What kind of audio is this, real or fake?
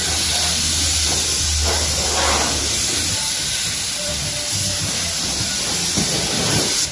real